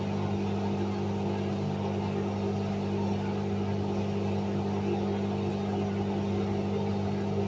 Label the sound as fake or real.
real